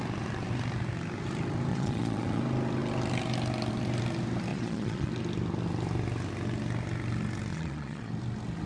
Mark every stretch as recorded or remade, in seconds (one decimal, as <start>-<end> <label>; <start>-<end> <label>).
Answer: 0.0-1.7 recorded; 1.7-2.4 remade; 2.4-4.5 recorded; 4.5-5.1 remade; 5.1-7.5 recorded; 7.5-8.1 remade; 8.1-8.7 recorded